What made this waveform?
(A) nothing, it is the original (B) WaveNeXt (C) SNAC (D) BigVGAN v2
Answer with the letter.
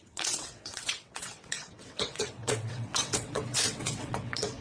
B